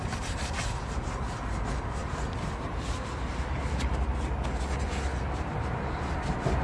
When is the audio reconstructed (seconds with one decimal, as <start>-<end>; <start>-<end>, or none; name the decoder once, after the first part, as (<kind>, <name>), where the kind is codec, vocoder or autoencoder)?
0.0-2.0 (vocoder, BigVGAN v2); 5.2-6.6